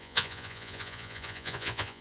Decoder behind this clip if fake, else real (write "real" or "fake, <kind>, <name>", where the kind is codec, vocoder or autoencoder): fake, vocoder, Vocos